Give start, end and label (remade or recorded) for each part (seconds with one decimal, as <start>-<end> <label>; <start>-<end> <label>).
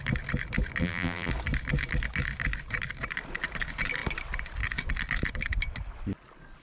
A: 0.0-0.8 recorded; 0.8-1.3 remade; 1.3-6.6 recorded